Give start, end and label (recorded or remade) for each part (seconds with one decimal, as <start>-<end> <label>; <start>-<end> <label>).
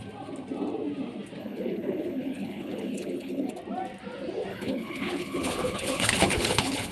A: 0.0-1.4 recorded; 1.4-3.5 remade; 3.5-4.5 recorded; 4.5-6.9 remade